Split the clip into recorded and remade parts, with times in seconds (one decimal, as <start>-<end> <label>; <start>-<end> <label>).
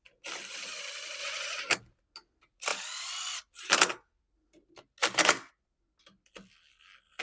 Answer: 0.0-7.2 recorded